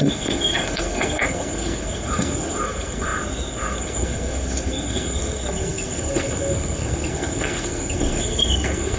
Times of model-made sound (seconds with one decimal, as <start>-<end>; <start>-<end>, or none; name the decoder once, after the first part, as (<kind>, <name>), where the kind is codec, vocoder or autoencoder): 0.0-9.0 (codec, SNAC)